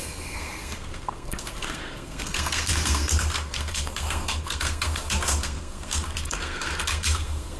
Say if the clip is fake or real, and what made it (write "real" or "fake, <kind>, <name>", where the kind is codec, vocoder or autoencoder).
fake, codec, SNAC